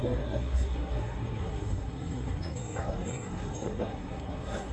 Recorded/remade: remade